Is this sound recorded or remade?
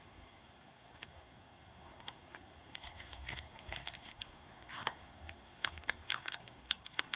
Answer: remade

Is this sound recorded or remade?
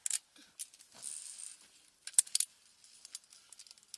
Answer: recorded